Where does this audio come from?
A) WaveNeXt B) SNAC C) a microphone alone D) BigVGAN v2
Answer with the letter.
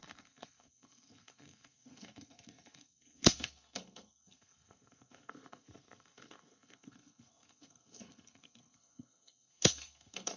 B